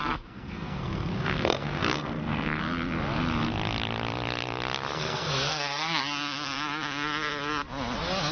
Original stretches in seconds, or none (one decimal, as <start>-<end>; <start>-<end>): 2.6-4.9; 6.0-8.3